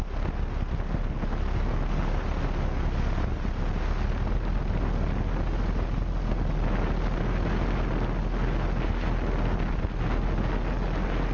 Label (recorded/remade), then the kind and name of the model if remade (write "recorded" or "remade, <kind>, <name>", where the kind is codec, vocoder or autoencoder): recorded